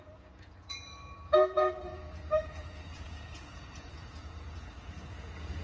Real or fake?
fake